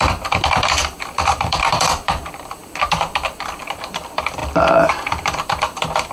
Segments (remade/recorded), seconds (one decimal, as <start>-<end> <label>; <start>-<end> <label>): 0.0-4.4 remade; 4.4-4.9 recorded; 4.9-6.1 remade